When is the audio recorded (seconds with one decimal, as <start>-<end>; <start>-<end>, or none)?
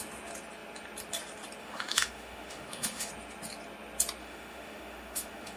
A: 0.0-1.6; 3.1-4.2